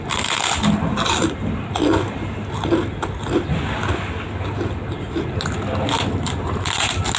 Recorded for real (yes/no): yes